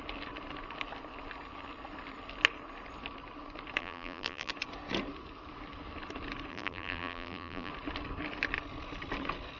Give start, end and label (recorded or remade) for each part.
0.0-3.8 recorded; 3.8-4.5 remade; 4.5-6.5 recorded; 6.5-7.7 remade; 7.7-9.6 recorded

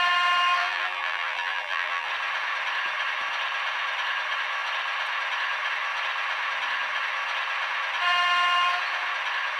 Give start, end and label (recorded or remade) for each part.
0.0-0.6 recorded; 0.6-2.1 remade; 2.1-9.6 recorded